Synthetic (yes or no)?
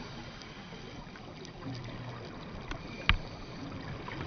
no